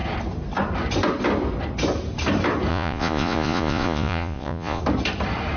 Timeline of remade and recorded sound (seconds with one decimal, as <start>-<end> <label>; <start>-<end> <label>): 0.0-2.7 recorded; 2.7-4.8 remade; 4.8-5.6 recorded

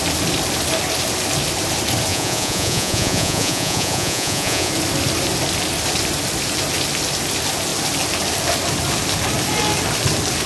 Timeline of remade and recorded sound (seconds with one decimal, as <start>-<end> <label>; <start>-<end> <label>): 0.0-2.1 recorded; 2.1-4.7 remade; 4.7-10.5 recorded